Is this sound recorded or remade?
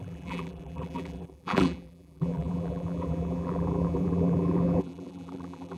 remade